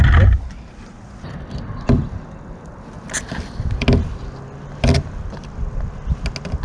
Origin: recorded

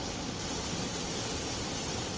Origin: recorded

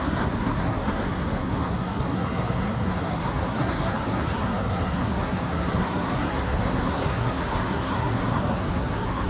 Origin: remade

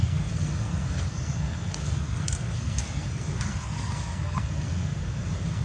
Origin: remade